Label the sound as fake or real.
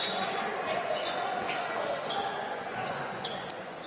fake